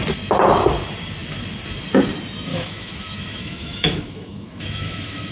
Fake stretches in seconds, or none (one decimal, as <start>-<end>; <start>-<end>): 2.5-5.3